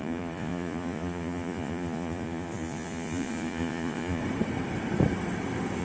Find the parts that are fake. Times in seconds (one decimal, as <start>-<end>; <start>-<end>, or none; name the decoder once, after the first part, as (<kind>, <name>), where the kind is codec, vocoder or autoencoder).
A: 0.0-4.2 (vocoder, Vocos)